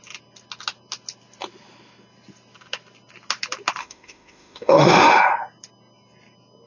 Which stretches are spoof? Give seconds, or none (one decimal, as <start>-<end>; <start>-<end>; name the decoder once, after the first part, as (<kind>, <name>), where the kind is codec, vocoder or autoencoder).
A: 3.8-5.1 (autoencoder, DAC-VAE)